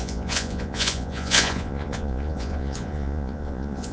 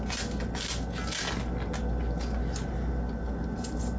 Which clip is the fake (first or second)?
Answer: first